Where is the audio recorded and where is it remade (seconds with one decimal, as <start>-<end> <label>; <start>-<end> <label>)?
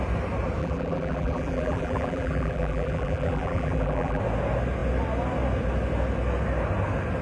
0.0-0.6 recorded; 0.6-4.2 remade; 4.2-7.2 recorded